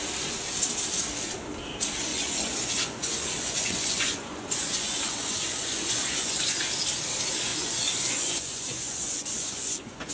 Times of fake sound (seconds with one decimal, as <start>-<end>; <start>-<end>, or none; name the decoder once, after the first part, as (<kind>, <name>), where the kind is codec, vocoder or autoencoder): 2.1-6.6 (vocoder, Vocos); 7.5-10.1